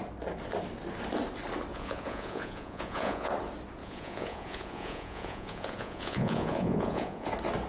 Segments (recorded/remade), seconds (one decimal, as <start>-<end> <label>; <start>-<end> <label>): 0.0-1.7 recorded; 1.7-3.3 remade; 3.3-3.8 recorded; 3.8-7.3 remade; 7.3-7.7 recorded